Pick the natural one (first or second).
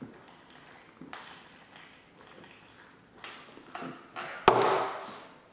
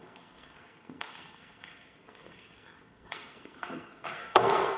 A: first